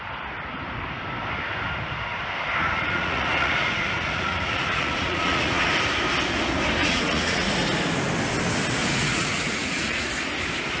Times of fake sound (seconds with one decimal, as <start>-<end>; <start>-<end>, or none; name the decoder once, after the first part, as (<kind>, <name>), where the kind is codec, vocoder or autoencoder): 2.6-5.7 (vocoder, Vocos); 6.8-7.5; 8.8-10.1